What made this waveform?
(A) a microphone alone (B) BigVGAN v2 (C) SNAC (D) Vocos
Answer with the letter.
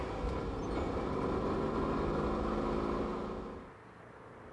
A